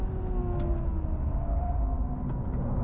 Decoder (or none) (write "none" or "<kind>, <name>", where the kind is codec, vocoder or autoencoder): none